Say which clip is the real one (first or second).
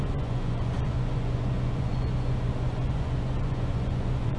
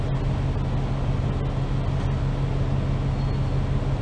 second